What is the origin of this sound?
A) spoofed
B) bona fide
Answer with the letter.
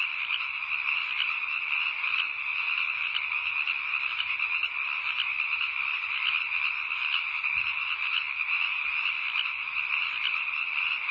B